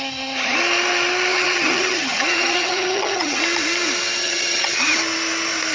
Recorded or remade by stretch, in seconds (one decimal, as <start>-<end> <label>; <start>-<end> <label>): 0.0-1.3 recorded; 1.3-3.4 remade; 3.4-4.2 recorded; 4.2-4.9 remade; 4.9-5.7 recorded

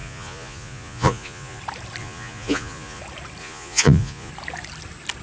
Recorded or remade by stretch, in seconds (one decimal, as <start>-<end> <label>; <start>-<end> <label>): 0.0-1.6 remade; 1.6-2.0 recorded; 2.0-3.0 remade; 3.0-3.4 recorded; 3.4-4.3 remade; 4.3-5.2 recorded

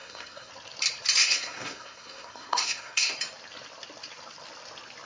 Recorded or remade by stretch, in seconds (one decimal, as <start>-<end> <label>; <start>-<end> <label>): 0.0-0.5 remade; 0.5-1.2 recorded; 1.2-3.1 remade; 3.1-5.1 recorded

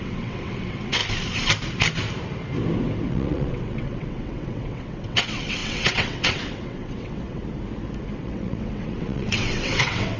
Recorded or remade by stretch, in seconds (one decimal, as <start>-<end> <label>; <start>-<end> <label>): 0.0-1.0 remade; 1.0-3.1 recorded; 3.1-7.4 remade; 7.4-8.2 recorded; 8.2-10.2 remade

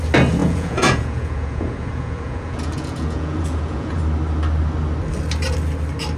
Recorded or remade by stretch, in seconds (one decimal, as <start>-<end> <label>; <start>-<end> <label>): 0.0-0.4 recorded; 0.4-4.0 remade; 4.0-6.2 recorded